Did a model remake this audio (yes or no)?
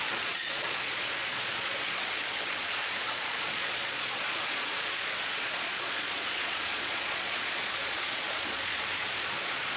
yes